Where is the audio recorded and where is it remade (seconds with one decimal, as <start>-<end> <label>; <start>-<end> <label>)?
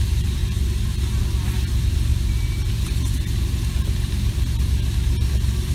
0.0-0.4 remade; 0.4-1.2 recorded; 1.2-2.1 remade; 2.1-5.7 recorded